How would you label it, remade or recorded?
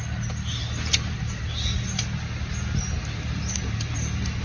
recorded